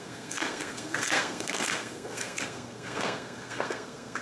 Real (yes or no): no